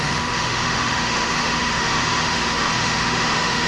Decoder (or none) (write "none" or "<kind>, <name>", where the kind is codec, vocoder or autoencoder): autoencoder, DAC-VAE